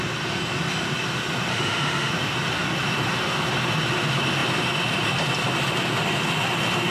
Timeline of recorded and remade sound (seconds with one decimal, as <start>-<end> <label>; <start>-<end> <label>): 0.0-1.5 recorded; 1.5-2.1 remade; 2.1-6.9 recorded